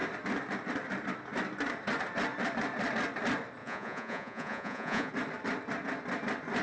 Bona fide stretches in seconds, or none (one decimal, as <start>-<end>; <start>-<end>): 0.0-3.6; 5.1-6.6